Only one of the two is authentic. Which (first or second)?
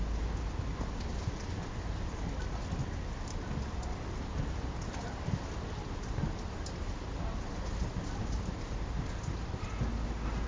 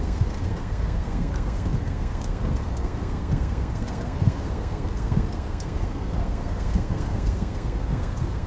first